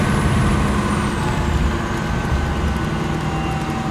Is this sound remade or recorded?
recorded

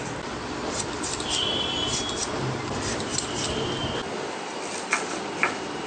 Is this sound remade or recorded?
recorded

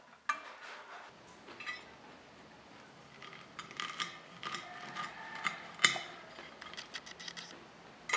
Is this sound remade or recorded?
recorded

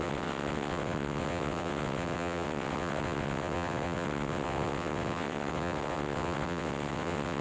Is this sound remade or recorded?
remade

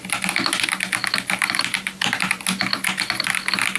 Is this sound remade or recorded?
recorded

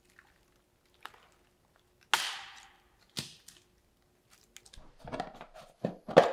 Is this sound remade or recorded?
recorded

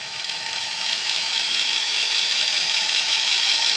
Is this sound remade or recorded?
remade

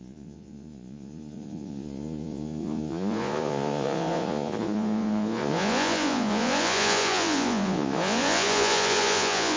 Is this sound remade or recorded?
remade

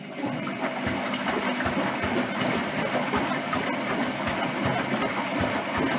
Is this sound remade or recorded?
recorded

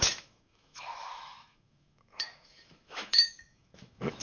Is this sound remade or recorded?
remade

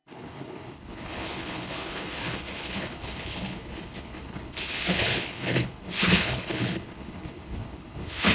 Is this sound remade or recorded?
remade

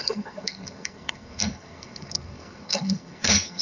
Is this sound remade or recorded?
remade